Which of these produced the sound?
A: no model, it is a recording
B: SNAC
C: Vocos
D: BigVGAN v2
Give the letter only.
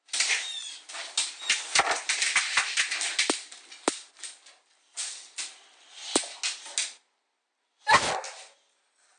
A